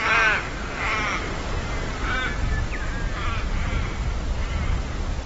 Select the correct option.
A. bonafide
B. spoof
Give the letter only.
A